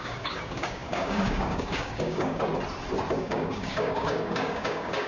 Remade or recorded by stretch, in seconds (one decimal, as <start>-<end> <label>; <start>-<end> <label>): 0.0-2.5 remade; 2.5-3.1 recorded; 3.1-5.1 remade